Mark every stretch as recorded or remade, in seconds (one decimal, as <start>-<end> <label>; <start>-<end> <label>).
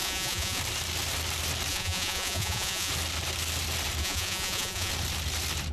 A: 0.0-0.6 remade; 0.6-1.7 recorded; 1.7-2.9 remade; 2.9-4.0 recorded; 4.0-4.9 remade; 4.9-5.7 recorded